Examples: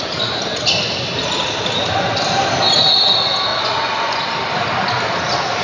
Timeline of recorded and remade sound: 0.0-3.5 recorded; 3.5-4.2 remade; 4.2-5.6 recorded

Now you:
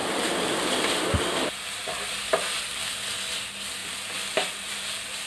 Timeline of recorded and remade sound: 0.0-5.3 recorded

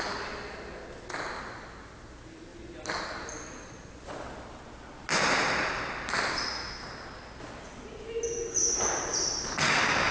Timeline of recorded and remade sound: 0.0-10.1 recorded

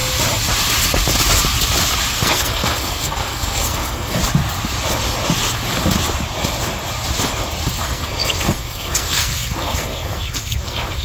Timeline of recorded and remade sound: 0.0-2.1 recorded; 2.1-4.2 remade; 4.2-7.7 recorded; 7.7-11.0 remade

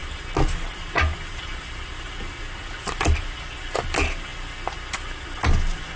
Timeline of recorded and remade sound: 0.0-6.0 recorded

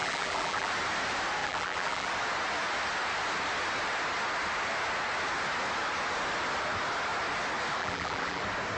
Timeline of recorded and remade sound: 0.0-0.7 remade; 0.7-1.4 recorded; 1.4-2.1 remade; 2.1-7.8 recorded; 7.8-8.4 remade; 8.4-8.8 recorded

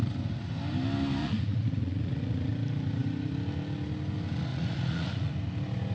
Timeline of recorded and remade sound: 0.0-1.2 recorded; 1.2-2.5 remade; 2.5-4.5 recorded; 4.5-5.3 remade; 5.3-5.9 recorded

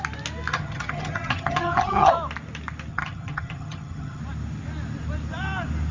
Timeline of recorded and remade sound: 0.0-0.5 recorded; 0.5-2.1 remade; 2.1-2.9 recorded; 2.9-4.2 remade; 4.2-5.9 recorded